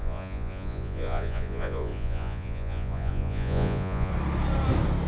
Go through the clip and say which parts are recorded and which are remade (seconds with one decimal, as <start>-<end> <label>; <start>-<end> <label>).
0.0-4.1 remade; 4.1-5.1 recorded